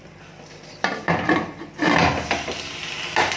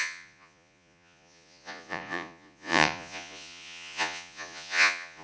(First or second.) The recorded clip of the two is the first